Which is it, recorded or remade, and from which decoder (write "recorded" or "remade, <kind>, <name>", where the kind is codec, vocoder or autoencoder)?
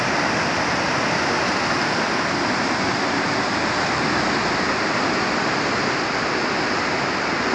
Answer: recorded